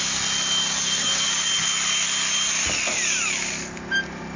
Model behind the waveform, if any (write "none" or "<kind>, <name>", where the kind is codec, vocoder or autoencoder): none